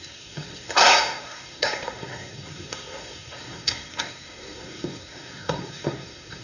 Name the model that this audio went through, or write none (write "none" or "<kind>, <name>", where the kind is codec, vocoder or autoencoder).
codec, SNAC